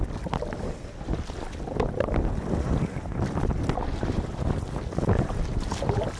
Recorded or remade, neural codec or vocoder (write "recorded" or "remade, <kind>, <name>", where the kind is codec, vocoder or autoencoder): recorded